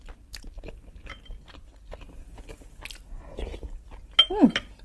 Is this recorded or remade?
recorded